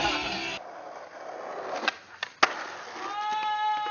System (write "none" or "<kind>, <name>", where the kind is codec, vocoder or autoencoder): none